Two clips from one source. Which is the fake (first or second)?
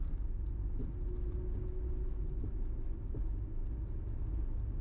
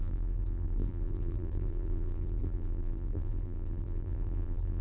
second